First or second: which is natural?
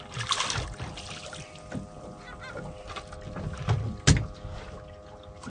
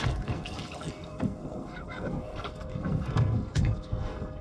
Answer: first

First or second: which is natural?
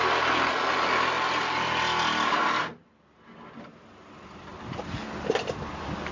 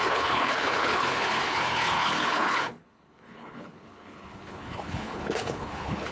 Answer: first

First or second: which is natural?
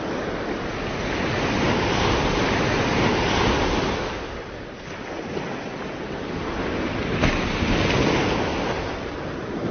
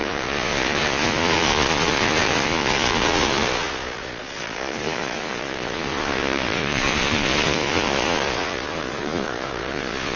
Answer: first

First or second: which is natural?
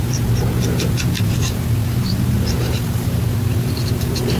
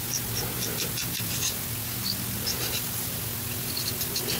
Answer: second